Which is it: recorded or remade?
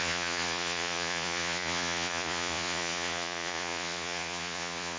remade